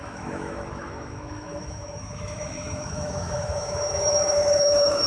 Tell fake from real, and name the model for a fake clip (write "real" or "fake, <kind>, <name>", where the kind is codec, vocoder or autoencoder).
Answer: fake, autoencoder, DAC-VAE